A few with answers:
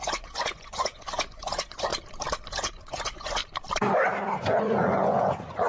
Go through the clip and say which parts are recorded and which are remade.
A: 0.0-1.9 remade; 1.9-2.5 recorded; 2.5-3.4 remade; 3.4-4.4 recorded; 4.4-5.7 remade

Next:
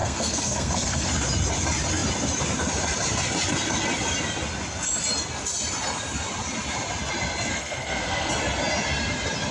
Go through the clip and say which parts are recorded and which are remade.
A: 0.0-1.1 remade; 1.1-7.5 recorded; 7.5-8.3 remade; 8.3-9.5 recorded

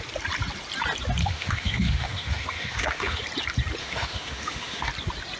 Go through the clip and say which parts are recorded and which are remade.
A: 0.0-1.2 recorded; 1.2-3.2 remade; 3.2-3.8 recorded; 3.8-4.9 remade; 4.9-5.4 recorded

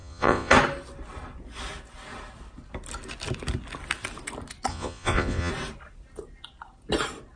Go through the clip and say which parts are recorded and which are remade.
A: 0.0-0.5 remade; 0.5-4.7 recorded; 4.7-5.5 remade; 5.5-7.4 recorded

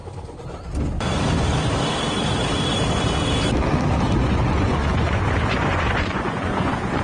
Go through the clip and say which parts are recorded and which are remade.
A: 0.0-4.2 recorded; 4.2-7.0 remade

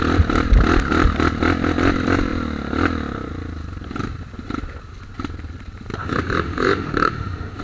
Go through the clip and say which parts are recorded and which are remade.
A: 0.0-6.0 recorded; 6.0-7.6 remade

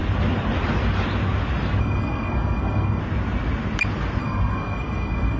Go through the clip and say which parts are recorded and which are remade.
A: 0.0-1.8 recorded; 1.8-3.0 remade; 3.0-4.2 recorded; 4.2-5.4 remade

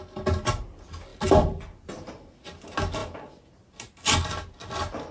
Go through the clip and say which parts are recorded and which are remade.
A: 0.0-5.1 recorded